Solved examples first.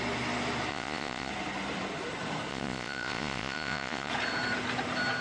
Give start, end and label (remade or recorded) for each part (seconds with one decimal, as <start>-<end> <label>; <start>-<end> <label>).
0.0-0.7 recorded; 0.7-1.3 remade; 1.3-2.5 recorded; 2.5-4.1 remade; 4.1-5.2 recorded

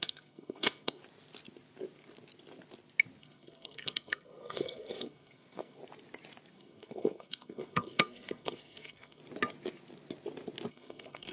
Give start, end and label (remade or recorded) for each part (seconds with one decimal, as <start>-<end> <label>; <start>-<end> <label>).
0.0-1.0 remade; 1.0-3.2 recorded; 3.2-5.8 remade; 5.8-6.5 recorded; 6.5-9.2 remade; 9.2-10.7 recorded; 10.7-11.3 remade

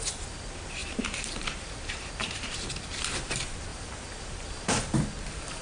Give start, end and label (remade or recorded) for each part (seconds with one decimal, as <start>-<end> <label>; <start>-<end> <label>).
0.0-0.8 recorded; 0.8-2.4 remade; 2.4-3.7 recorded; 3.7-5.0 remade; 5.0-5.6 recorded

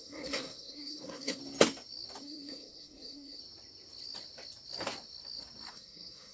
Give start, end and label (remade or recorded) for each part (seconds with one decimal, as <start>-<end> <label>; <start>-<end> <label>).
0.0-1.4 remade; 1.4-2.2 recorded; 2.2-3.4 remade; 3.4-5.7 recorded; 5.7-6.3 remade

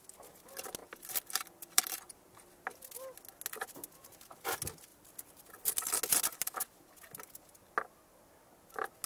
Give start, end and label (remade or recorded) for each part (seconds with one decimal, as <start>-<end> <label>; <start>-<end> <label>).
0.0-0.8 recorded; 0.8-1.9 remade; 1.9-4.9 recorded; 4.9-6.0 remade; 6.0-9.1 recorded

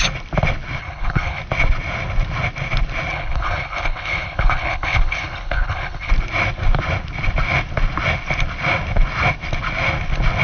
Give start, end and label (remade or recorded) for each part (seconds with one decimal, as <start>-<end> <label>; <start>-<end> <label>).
0.0-0.8 recorded; 0.8-1.4 remade; 1.4-3.1 recorded; 3.1-6.1 remade; 6.1-10.4 recorded

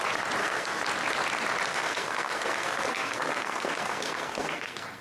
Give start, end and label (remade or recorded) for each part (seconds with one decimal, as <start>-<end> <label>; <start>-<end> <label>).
0.0-0.4 recorded; 0.4-0.9 remade; 0.9-1.7 recorded; 1.7-5.0 remade